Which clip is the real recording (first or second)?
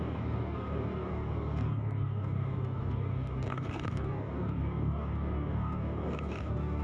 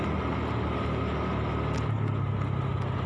second